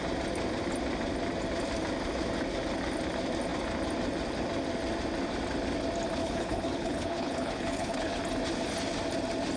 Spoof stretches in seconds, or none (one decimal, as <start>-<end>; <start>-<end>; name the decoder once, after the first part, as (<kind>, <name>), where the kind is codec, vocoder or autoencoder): 6.2-8.2 (codec, HILCodec)